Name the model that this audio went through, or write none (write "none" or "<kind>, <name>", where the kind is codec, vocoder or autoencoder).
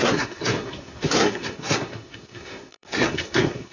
codec, SNAC